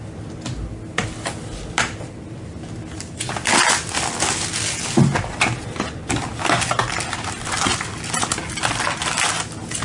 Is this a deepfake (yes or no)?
no